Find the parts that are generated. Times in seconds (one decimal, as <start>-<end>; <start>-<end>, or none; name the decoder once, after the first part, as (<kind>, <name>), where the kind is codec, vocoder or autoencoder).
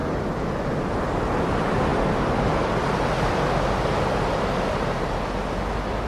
none